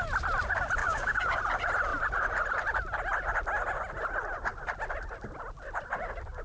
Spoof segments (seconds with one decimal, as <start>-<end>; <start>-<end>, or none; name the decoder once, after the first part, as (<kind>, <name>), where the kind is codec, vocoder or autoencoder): 0.8-1.4 (codec, DAC)